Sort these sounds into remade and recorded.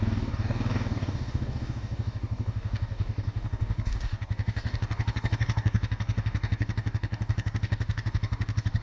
remade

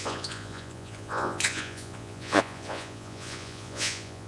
remade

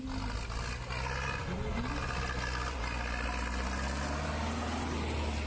recorded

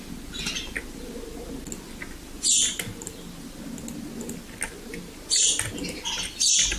recorded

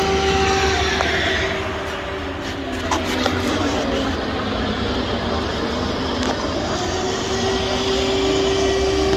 recorded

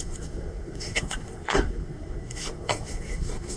remade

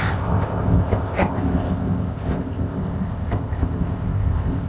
remade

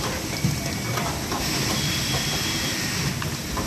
recorded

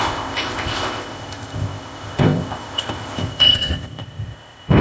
remade